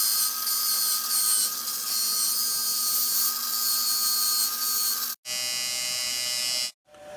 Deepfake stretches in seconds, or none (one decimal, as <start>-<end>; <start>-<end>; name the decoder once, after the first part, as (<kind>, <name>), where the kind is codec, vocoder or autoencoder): none